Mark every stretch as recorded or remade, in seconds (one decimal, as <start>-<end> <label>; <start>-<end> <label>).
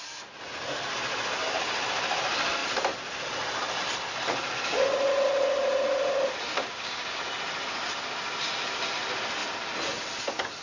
0.0-6.6 recorded; 6.6-7.2 remade; 7.2-10.6 recorded